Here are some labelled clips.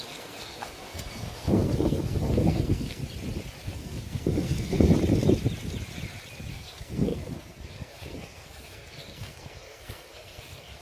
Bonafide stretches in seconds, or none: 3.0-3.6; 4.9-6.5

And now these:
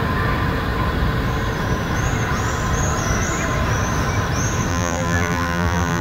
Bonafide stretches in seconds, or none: 0.0-4.7

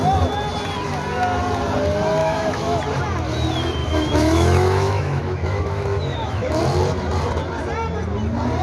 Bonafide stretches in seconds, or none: 0.0-2.2; 2.8-3.8; 6.6-8.6

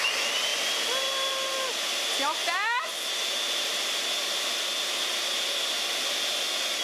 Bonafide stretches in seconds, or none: 0.0-6.8

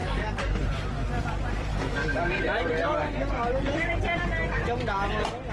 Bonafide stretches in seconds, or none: 0.0-1.7; 2.4-5.5

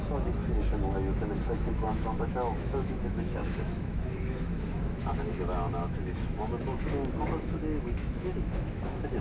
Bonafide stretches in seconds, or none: 0.4-1.4